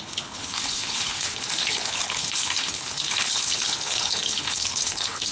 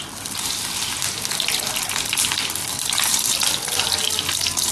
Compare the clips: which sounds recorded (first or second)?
second